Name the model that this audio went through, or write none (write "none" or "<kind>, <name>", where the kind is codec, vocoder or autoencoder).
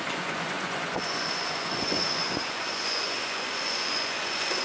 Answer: vocoder, Vocos